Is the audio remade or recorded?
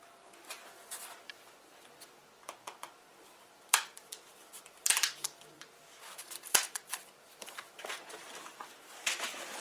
remade